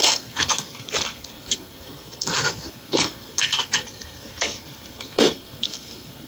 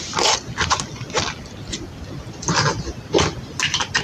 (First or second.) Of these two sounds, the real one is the second